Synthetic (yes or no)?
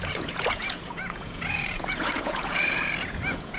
yes